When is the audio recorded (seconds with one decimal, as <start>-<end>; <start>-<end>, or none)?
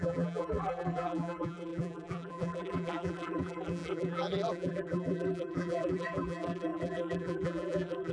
none